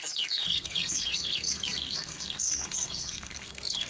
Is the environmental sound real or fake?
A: fake